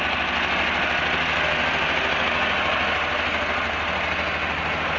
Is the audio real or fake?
real